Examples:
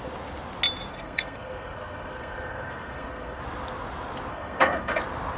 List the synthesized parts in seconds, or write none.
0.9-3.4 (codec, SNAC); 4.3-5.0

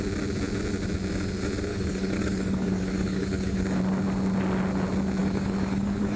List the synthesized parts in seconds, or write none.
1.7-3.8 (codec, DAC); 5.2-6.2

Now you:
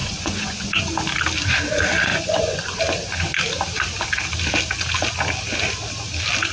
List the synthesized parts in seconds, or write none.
0.0-0.8 (vocoder, Vocos); 2.1-2.8

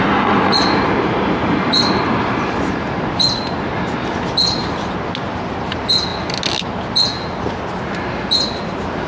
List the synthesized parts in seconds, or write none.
none

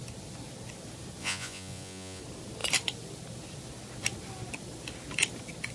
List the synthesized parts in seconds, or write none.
1.2-2.2 (vocoder, Vocos)